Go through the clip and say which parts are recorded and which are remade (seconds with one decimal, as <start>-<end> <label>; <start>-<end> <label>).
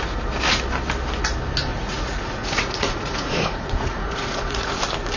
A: 0.0-1.7 recorded; 1.7-4.8 remade; 4.8-5.2 recorded